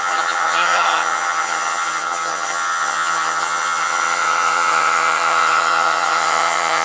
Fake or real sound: fake